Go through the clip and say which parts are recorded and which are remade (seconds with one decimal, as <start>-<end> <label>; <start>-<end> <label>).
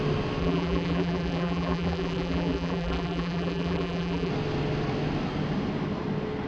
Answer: 0.0-0.4 recorded; 0.4-4.3 remade; 4.3-6.5 recorded